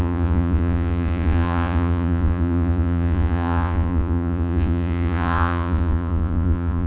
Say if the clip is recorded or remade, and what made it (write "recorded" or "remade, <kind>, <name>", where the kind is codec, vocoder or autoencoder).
remade, vocoder, Vocos